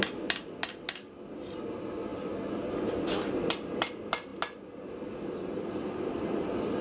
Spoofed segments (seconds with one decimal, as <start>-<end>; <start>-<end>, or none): none